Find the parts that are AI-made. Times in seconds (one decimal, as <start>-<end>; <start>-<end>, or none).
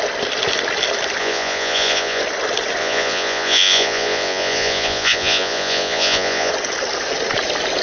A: 1.2-2.2; 2.8-6.5